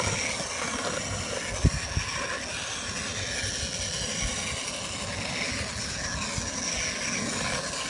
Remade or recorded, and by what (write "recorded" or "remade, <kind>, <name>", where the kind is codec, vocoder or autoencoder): recorded